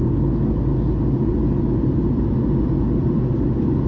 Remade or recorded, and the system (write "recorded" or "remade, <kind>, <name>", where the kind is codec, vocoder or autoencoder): recorded